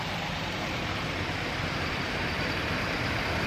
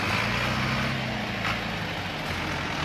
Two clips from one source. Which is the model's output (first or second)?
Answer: first